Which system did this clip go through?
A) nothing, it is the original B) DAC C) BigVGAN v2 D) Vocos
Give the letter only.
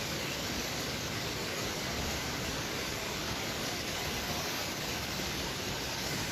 B